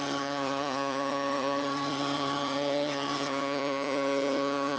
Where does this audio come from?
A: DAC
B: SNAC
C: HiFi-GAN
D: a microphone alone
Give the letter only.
C